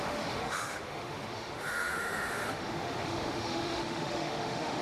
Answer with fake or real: fake